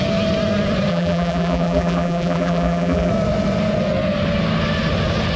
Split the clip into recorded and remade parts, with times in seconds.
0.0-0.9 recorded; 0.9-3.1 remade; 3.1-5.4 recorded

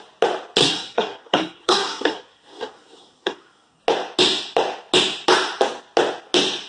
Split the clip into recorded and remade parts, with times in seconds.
0.0-0.6 recorded; 0.6-3.8 remade; 3.8-6.7 recorded

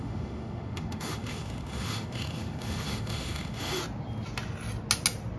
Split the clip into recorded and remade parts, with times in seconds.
0.0-3.8 remade; 3.8-5.4 recorded

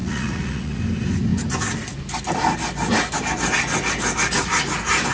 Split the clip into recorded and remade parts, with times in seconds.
0.0-0.8 remade; 0.8-5.1 recorded

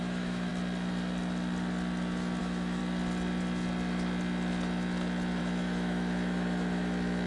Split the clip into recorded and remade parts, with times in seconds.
0.0-0.5 remade; 0.5-2.4 recorded; 2.4-2.8 remade; 2.8-5.4 recorded; 5.4-7.3 remade

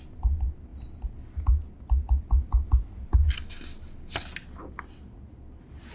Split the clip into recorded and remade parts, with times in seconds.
0.0-5.9 recorded